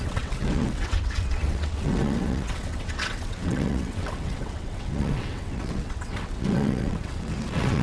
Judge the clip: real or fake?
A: fake